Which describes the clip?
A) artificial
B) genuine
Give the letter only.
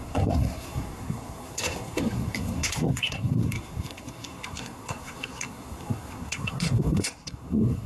A